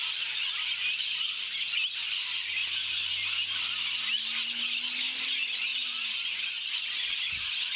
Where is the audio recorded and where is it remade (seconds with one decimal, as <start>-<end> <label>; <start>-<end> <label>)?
0.0-7.8 recorded